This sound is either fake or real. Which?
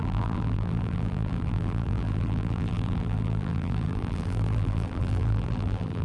fake